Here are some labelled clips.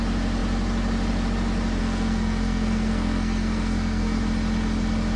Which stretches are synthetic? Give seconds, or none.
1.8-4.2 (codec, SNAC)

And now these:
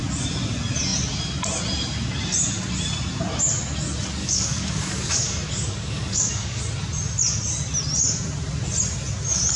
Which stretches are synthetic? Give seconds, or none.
4.2-6.6 (codec, DAC)

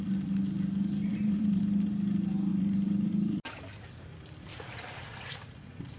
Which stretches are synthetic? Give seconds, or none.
1.1-1.6 (vocoder, BigVGAN v2); 2.5-3.4; 4.5-6.0

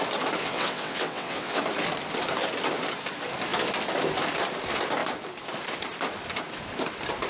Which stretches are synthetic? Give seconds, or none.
0.4-1.6 (vocoder, WaveNeXt)